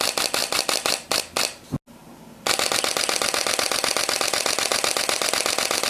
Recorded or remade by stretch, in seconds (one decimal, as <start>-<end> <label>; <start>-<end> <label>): 0.0-0.4 recorded; 0.4-1.2 remade; 1.2-4.7 recorded; 4.7-5.3 remade; 5.3-5.9 recorded